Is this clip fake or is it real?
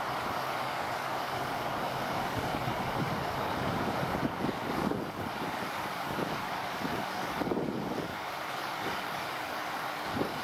fake